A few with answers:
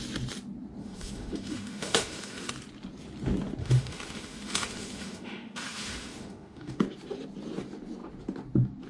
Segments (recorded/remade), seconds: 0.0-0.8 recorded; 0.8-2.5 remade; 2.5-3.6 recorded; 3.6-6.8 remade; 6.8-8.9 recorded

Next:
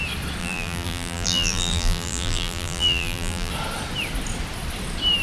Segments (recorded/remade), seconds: 0.0-0.4 recorded; 0.4-3.5 remade; 3.5-5.2 recorded

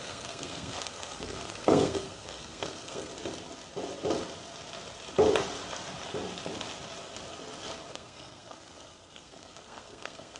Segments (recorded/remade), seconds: 0.0-3.1 remade; 3.1-7.9 recorded; 7.9-10.4 remade

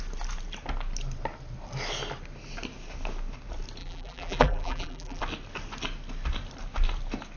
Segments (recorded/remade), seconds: 0.0-3.8 recorded; 3.8-5.2 remade; 5.2-7.4 recorded

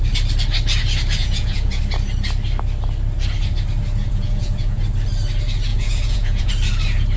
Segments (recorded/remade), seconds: 0.0-1.2 recorded; 1.2-1.8 remade; 1.8-4.0 recorded; 4.0-4.8 remade; 4.8-5.7 recorded; 5.7-6.5 remade; 6.5-7.2 recorded

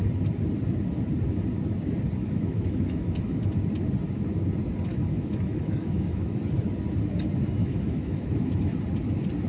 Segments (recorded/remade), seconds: 0.0-2.2 recorded; 2.2-3.5 remade; 3.5-4.9 recorded; 4.9-6.4 remade; 6.4-7.6 recorded; 7.6-8.8 remade; 8.8-9.5 recorded